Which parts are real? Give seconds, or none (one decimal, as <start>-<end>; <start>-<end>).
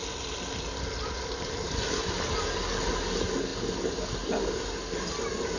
0.0-5.6